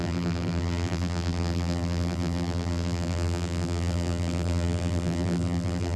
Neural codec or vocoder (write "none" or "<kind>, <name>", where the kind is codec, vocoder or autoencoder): vocoder, BigVGAN v2